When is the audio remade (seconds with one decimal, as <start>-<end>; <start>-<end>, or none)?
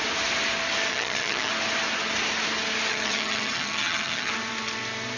0.9-1.5; 2.9-4.3